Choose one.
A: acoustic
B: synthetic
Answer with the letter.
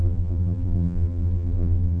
B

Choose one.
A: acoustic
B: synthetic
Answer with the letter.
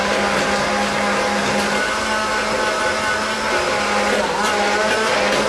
A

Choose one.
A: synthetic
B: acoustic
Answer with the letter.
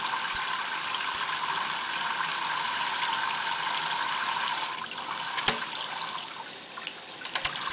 B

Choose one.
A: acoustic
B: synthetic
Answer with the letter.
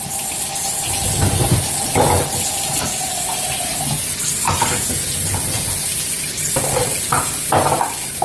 A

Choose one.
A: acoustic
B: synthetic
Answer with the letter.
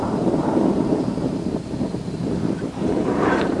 B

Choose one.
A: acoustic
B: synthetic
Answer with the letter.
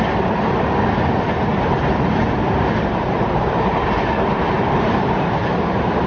B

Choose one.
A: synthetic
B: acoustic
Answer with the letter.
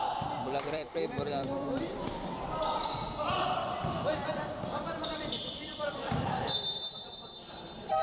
A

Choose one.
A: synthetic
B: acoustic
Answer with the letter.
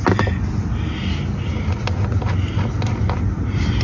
B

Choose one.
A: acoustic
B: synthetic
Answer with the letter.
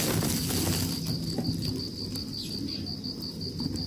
A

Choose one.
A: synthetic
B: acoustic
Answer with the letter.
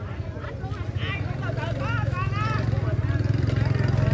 B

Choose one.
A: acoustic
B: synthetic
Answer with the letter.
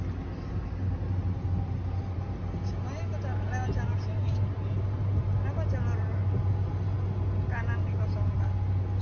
A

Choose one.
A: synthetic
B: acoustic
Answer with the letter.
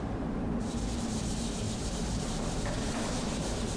A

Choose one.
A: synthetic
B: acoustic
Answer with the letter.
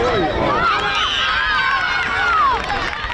B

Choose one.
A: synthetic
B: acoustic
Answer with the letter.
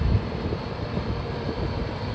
A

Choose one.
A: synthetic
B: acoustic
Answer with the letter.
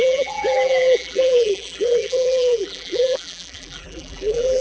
A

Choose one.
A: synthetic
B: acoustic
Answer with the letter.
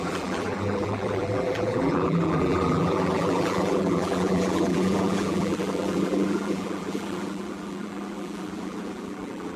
A